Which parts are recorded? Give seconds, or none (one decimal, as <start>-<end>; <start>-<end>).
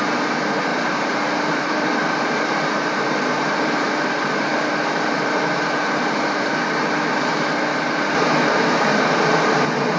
0.0-0.7; 4.6-10.0